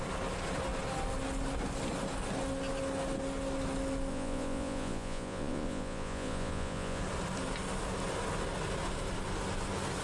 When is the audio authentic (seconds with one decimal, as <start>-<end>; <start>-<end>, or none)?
0.0-4.1; 7.0-10.0